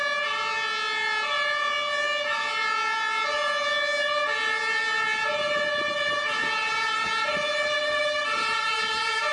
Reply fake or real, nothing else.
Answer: real